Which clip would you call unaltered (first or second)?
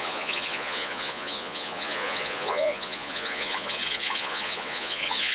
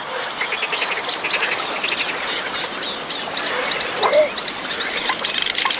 second